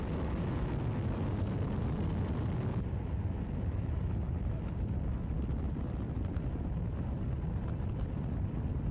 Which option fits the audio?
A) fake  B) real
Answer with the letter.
B